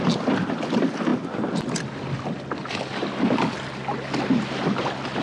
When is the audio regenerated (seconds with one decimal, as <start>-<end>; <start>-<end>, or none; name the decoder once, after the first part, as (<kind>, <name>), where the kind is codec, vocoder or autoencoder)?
none